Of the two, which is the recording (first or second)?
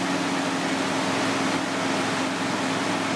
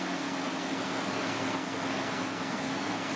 first